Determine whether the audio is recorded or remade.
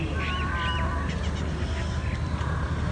recorded